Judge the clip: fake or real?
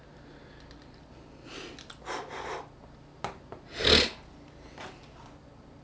real